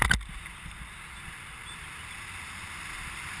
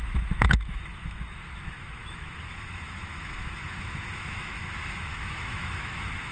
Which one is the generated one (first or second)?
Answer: second